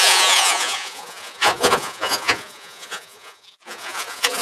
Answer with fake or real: fake